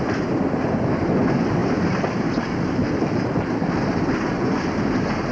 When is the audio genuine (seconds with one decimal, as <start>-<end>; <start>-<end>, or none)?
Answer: 0.0-5.3